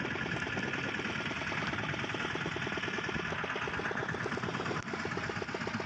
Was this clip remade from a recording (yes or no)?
no